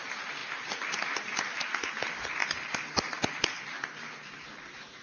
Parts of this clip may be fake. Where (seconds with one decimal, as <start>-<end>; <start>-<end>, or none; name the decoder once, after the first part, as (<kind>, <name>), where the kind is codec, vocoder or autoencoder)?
none